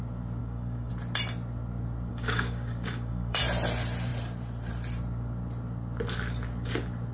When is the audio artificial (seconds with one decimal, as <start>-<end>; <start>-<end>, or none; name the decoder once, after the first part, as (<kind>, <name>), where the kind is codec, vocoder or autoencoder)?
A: 0.4-0.9 (codec, DAC); 2.1-3.4

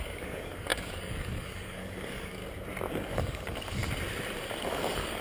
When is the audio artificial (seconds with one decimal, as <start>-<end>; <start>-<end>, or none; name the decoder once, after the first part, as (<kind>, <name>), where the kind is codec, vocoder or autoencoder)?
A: 0.0-2.4 (codec, DAC); 2.9-3.8; 4.6-5.2